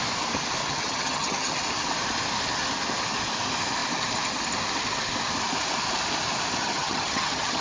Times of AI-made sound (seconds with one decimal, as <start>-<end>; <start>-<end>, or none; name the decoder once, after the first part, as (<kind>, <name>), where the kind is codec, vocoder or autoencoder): 0.6-1.6 (vocoder, HiFi-GAN); 6.6-7.6